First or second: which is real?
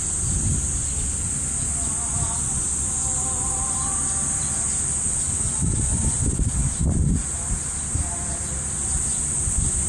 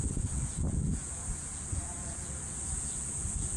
first